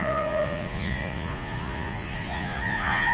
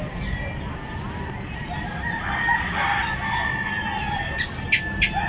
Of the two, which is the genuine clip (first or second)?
second